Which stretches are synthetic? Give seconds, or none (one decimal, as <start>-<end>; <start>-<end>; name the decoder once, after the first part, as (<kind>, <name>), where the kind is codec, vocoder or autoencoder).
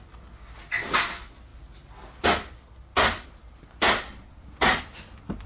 none